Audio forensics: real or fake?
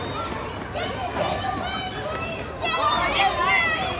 real